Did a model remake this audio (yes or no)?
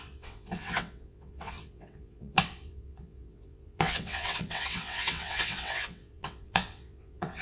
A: yes